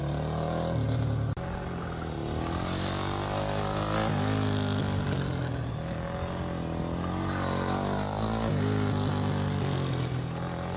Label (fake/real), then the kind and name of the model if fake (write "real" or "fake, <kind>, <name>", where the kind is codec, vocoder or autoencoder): real